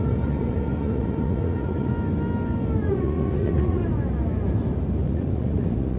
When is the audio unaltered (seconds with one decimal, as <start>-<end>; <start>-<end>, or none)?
1.9-2.8; 3.8-5.0